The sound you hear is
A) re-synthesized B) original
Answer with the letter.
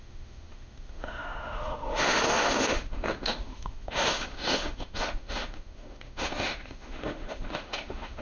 A